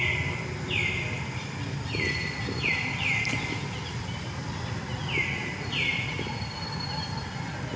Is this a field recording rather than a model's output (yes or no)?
yes